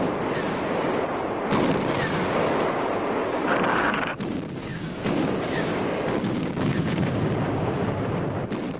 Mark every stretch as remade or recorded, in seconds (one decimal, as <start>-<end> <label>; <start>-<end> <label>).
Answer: 0.0-3.7 recorded; 3.7-8.1 remade; 8.1-8.8 recorded